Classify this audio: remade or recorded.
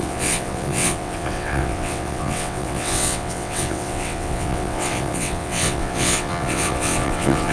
remade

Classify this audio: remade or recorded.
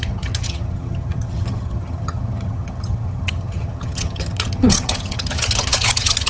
remade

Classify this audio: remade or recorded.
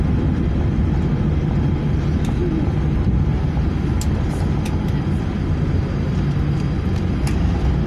recorded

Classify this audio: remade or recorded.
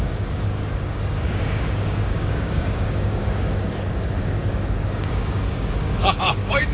remade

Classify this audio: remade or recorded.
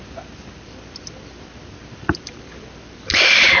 recorded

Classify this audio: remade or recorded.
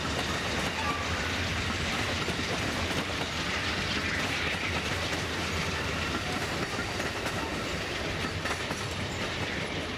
remade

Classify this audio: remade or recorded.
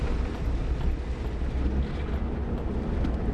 recorded